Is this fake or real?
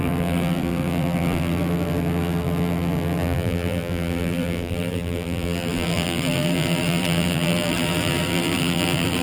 fake